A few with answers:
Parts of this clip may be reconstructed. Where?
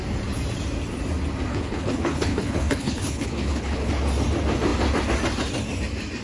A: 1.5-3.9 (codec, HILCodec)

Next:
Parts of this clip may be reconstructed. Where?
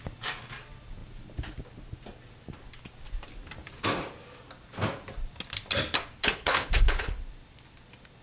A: 6.2-7.1 (codec, HILCodec)